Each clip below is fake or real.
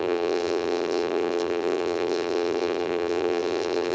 fake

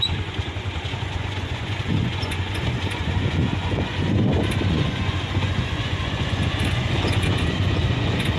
fake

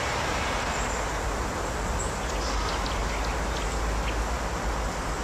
real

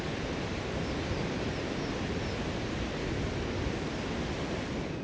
real